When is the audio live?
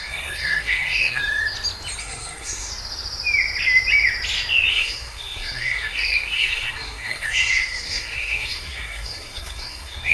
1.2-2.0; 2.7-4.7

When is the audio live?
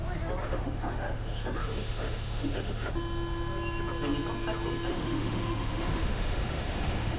0.0-0.4; 2.9-4.9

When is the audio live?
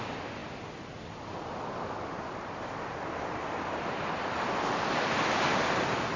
0.0-0.4; 4.1-6.2